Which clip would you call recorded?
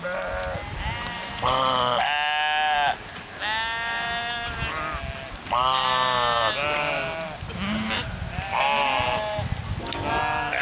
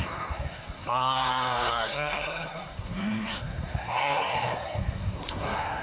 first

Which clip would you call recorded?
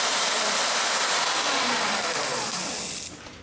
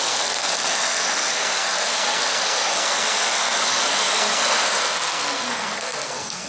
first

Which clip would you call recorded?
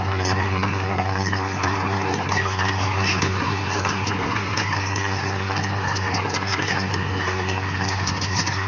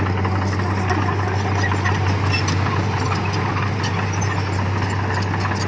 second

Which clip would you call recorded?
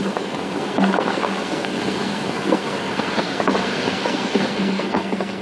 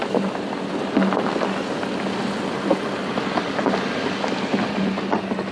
second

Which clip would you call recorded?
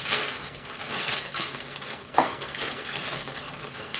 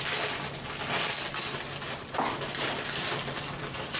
second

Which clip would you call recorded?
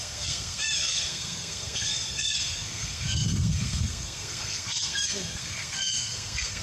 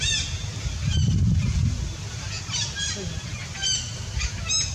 second